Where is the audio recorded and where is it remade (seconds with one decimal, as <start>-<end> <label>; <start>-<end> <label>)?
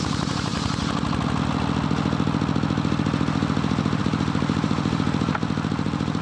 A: 0.0-0.5 remade; 0.5-4.0 recorded; 4.0-6.2 remade